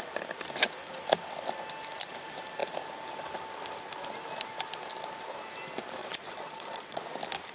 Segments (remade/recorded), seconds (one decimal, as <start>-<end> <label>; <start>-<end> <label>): 0.0-6.0 recorded; 6.0-7.0 remade; 7.0-7.5 recorded

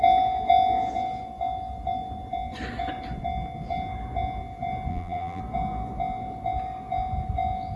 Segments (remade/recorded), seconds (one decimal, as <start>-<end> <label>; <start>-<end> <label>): 0.0-4.9 recorded; 4.9-5.4 remade; 5.4-7.8 recorded